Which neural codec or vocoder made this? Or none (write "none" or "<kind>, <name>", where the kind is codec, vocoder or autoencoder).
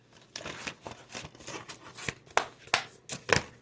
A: none